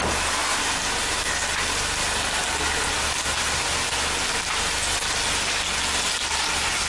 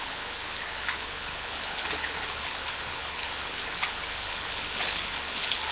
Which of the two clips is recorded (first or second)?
first